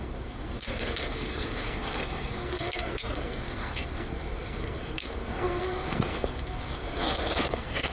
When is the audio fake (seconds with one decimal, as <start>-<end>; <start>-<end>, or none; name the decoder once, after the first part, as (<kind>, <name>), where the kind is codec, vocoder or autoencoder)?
0.0-7.9 (codec, SNAC)